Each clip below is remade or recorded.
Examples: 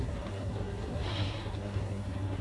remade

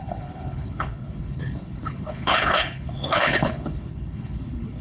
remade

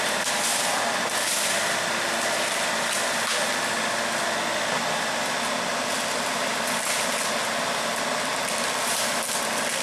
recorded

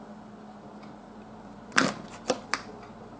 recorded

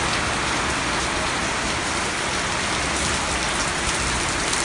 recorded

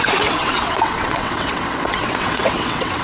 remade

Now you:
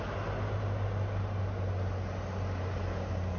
recorded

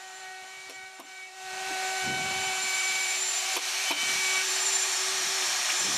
remade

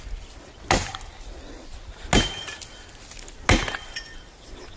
recorded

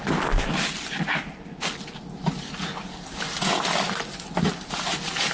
recorded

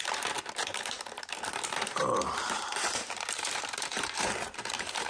remade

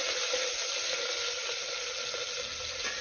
recorded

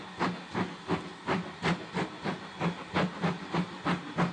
recorded